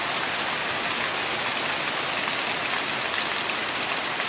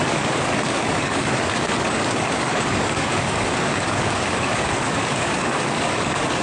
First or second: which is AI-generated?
second